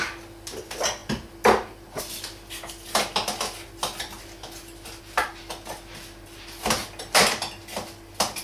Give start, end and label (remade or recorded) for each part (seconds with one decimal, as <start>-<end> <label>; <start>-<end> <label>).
0.0-8.4 recorded